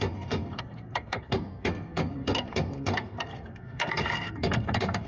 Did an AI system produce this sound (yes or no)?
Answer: yes